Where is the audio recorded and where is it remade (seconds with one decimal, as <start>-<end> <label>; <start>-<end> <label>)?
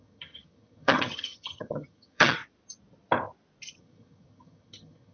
0.0-2.4 remade; 2.4-3.8 recorded; 3.8-5.1 remade